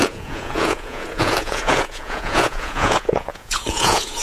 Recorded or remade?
remade